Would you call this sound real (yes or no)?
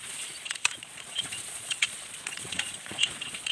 no